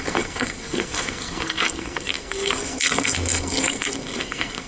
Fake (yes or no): yes